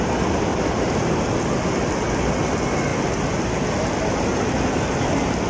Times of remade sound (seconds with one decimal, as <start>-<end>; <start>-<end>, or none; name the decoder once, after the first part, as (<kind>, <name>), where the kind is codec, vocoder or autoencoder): none